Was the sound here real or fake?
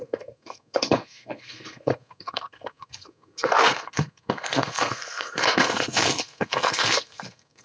fake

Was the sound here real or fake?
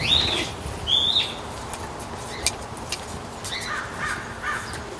real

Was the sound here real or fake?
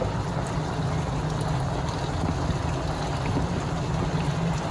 real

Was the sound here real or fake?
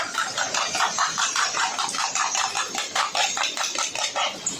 fake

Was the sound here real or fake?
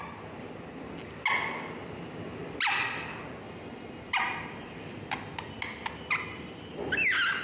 real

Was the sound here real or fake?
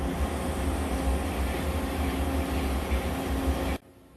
real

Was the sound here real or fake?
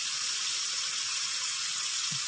fake